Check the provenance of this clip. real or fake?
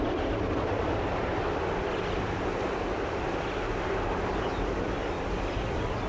fake